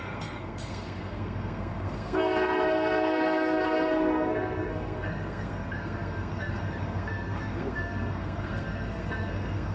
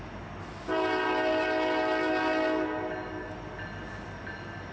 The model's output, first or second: first